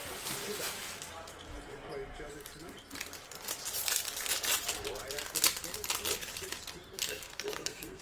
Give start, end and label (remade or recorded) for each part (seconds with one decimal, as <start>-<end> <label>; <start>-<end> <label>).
0.0-6.9 recorded; 6.9-8.0 remade